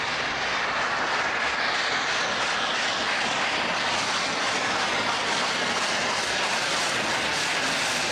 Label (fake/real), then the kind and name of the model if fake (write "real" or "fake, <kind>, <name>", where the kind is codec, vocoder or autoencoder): real